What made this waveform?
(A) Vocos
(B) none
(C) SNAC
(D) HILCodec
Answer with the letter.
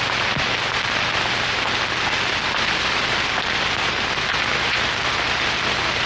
B